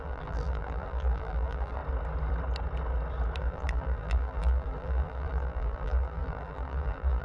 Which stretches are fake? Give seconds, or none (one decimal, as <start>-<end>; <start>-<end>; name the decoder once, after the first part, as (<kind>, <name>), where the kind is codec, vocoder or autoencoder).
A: 0.0-1.8 (vocoder, BigVGAN v2); 3.4-7.2